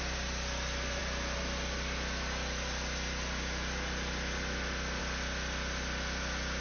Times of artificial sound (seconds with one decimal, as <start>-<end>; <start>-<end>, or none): none